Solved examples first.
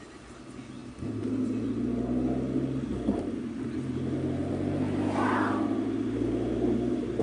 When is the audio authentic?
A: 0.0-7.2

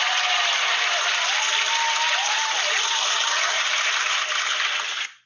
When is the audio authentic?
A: 0.0-5.3

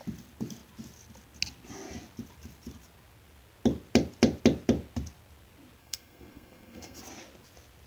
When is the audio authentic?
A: 0.0-5.8; 7.0-7.9

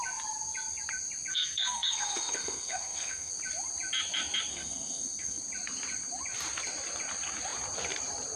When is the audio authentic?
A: 0.0-1.3; 3.3-4.5; 5.4-8.4

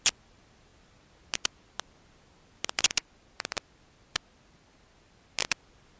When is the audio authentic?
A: 0.0-6.0

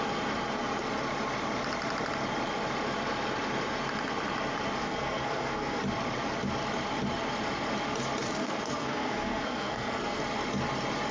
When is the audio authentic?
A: 0.0-4.8; 5.8-8.4; 10.2-11.1